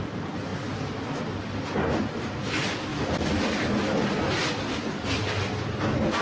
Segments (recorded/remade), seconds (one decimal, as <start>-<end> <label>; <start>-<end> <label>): 0.0-6.2 recorded